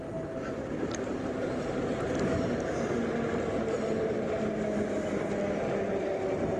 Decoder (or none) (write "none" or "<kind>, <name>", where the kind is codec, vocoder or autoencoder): none